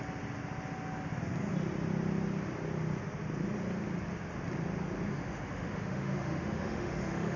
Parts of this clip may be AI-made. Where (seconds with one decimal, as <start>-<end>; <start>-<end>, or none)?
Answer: 5.1-7.4